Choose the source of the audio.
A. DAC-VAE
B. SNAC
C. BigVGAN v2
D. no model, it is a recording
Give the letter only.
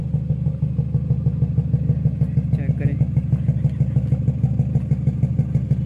D